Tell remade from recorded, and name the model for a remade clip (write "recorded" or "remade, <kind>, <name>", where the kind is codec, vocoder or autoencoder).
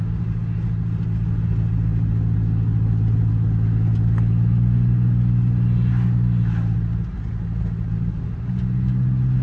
recorded